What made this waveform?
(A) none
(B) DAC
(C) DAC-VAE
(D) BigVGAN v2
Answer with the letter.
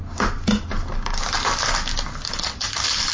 A